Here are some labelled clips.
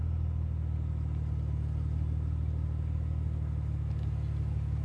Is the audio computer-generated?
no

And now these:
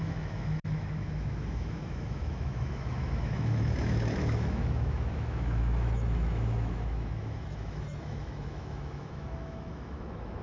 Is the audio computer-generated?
yes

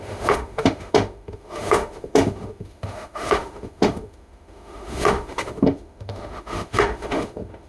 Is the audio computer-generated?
yes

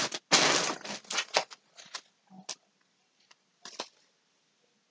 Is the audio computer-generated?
no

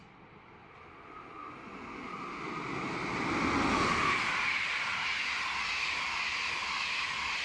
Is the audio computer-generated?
no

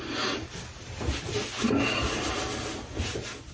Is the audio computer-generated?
no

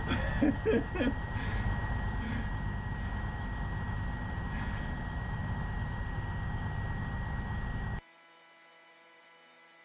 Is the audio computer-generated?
no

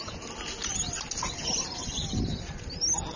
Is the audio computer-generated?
no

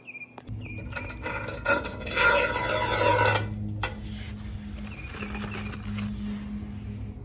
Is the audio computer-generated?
no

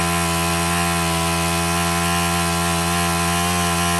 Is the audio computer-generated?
no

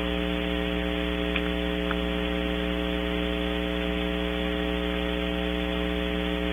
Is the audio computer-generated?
no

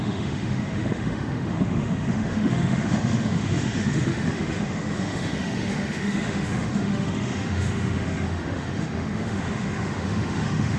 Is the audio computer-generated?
yes